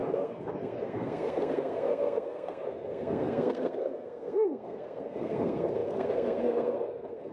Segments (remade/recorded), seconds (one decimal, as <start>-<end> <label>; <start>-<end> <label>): 0.0-7.3 remade